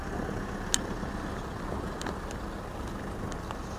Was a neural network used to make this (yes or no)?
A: no